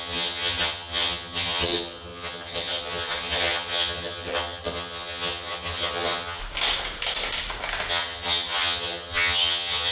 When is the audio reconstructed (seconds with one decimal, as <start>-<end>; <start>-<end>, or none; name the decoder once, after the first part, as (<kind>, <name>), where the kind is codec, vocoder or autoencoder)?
0.0-6.4 (vocoder, HiFi-GAN); 7.9-9.9